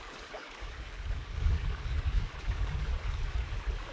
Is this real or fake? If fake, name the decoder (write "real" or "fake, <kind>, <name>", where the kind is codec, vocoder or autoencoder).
fake, codec, DAC